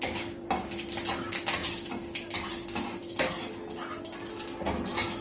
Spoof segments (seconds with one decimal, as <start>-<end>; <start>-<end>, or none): none